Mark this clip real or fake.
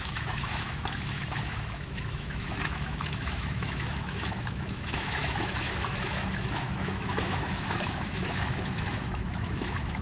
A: fake